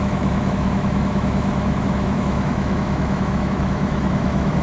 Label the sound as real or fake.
fake